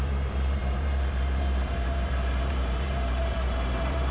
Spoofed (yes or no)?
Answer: yes